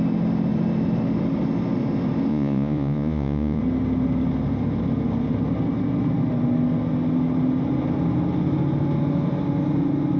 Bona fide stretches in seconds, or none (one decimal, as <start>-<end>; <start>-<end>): 0.0-2.3; 3.6-10.2